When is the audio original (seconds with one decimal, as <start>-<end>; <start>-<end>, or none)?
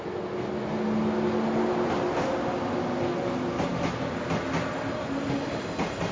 0.0-6.1